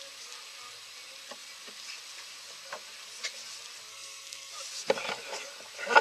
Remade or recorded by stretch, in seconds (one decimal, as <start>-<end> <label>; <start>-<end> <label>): 0.0-3.9 recorded; 3.9-4.5 remade; 4.5-6.0 recorded